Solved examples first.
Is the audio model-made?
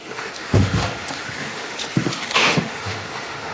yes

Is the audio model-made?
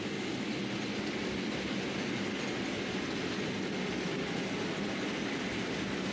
no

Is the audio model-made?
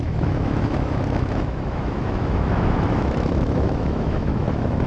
yes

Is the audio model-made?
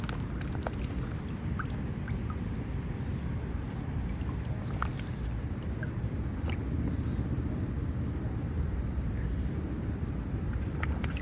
no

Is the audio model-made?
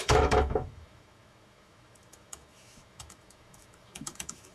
yes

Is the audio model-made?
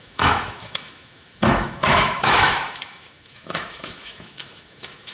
yes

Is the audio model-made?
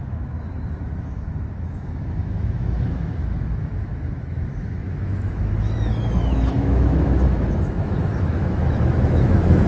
yes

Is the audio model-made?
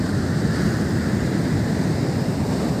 no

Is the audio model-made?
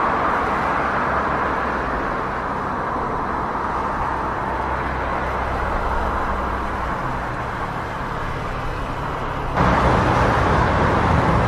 no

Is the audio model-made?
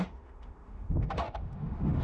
yes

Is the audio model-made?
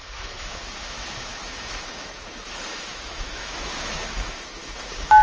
yes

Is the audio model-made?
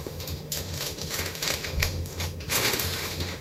yes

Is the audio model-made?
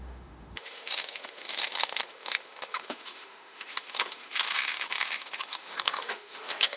yes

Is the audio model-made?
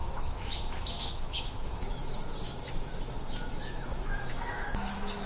yes